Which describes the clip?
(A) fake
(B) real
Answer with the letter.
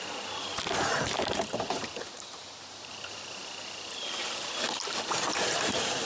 A